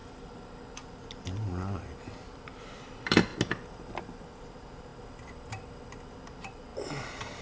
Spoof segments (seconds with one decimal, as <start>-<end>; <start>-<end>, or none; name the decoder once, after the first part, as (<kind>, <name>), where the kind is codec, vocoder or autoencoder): 2.0-3.3 (vocoder, BigVGAN v2); 4.0-4.9; 6.3-6.7